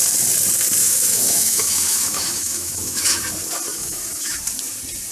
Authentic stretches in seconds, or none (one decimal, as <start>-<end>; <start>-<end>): 0.0-0.8; 3.2-3.7; 4.4-5.1